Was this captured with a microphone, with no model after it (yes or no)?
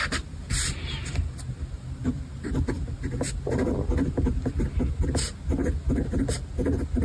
yes